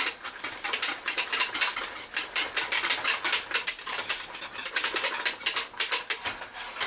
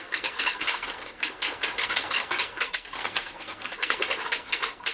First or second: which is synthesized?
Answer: second